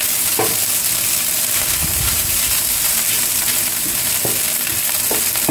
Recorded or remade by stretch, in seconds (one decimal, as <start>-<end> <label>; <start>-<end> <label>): 0.0-1.8 recorded; 1.8-4.1 remade; 4.1-5.5 recorded